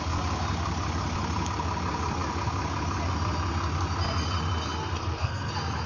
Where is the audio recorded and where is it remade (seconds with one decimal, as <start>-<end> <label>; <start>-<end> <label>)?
0.0-4.9 recorded; 4.9-5.5 remade; 5.5-5.9 recorded